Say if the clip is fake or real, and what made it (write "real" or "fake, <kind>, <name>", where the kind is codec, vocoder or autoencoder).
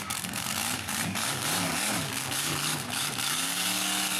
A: fake, codec, DAC